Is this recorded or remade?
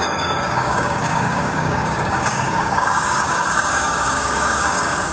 remade